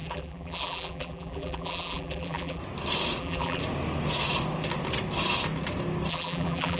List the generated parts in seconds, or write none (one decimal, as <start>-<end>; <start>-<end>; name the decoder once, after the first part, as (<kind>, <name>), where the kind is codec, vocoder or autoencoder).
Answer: 0.0-2.6 (vocoder, BigVGAN v2); 3.2-3.6; 6.1-6.8